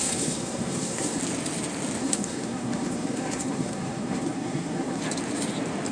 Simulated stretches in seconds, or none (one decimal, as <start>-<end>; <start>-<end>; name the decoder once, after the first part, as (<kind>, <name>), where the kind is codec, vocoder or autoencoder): 0.0-1.2 (codec, SNAC); 2.0-5.0